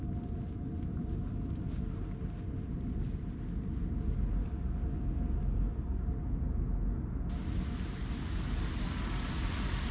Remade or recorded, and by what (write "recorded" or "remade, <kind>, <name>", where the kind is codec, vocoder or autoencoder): recorded